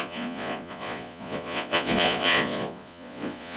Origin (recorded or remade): remade